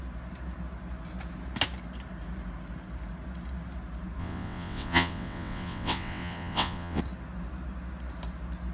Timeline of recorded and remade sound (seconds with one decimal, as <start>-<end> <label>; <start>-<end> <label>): 0.0-4.2 recorded; 4.2-7.0 remade; 7.0-8.7 recorded